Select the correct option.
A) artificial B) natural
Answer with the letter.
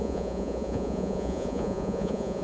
A